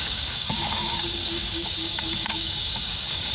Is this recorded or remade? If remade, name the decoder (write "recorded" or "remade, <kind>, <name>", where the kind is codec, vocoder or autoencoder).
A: remade, codec, DAC